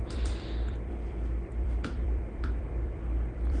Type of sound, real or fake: fake